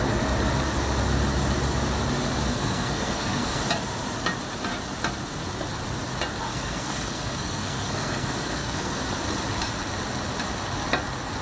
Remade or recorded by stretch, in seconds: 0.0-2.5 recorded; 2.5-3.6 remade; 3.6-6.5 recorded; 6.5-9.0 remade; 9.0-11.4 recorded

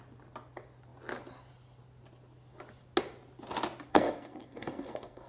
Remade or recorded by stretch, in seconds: 0.0-3.9 recorded; 3.9-5.3 remade

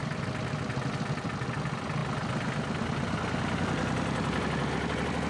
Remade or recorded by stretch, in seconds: 0.0-5.3 recorded